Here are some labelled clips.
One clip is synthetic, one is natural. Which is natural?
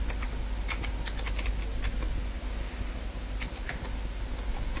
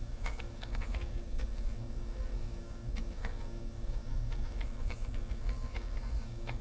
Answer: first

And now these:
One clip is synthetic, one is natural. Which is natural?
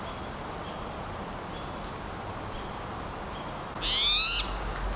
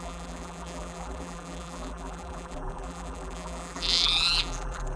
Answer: first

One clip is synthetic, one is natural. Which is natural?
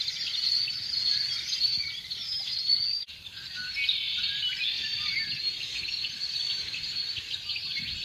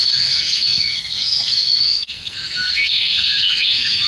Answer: first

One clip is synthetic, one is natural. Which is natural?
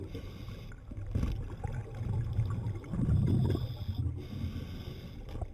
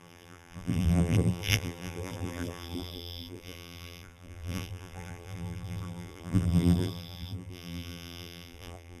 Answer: first